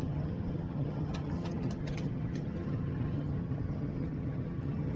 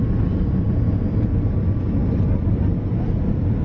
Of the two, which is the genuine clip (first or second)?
second